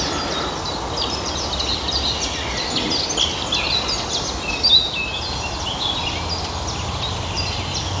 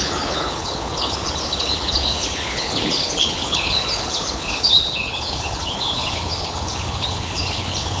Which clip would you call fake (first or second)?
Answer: second